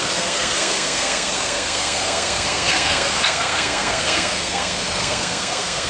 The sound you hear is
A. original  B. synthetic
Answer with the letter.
B